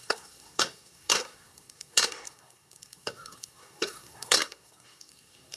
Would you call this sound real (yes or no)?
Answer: no